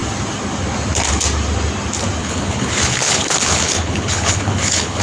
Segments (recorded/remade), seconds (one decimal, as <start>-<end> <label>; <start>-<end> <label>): 0.0-2.2 recorded; 2.2-5.0 remade